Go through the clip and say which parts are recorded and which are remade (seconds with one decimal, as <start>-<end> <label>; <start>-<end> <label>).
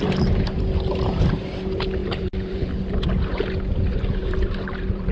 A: 0.0-2.0 recorded; 2.0-2.7 remade; 2.7-4.2 recorded; 4.2-5.1 remade